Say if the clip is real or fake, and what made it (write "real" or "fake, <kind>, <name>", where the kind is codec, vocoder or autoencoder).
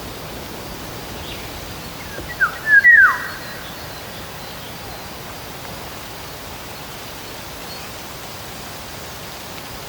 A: real